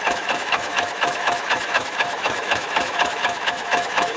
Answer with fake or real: fake